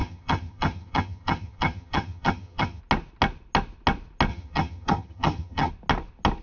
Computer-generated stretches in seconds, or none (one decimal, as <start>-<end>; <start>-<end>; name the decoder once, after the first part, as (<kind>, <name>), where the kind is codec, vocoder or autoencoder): 0.0-2.8 (vocoder, HiFi-GAN); 4.3-5.7